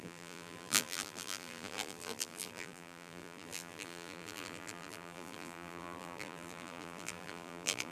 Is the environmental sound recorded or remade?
remade